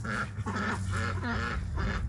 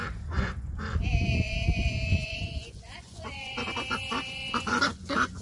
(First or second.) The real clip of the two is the first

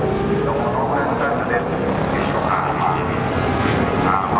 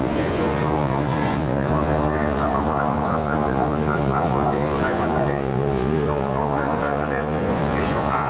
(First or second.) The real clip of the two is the first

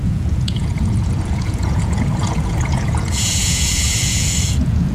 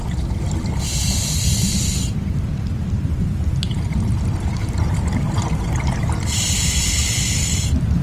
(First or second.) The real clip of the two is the second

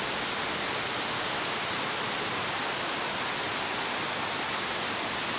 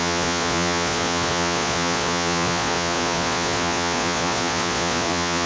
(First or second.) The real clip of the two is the first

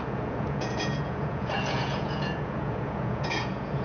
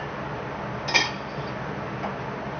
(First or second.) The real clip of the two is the second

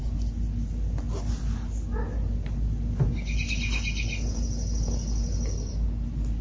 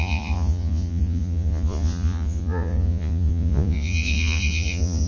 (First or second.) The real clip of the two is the first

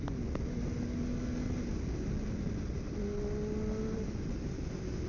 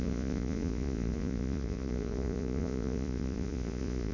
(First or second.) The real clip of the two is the first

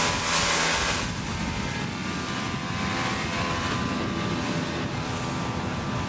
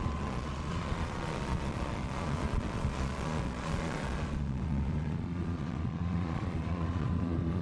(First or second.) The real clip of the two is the first